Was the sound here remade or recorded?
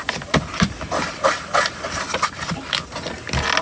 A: recorded